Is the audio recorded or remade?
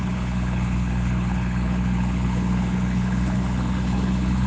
remade